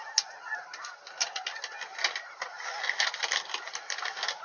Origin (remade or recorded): recorded